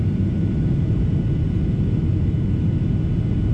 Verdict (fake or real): real